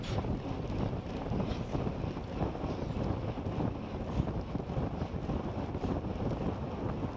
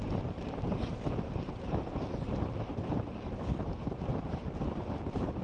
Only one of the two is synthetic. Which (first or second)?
second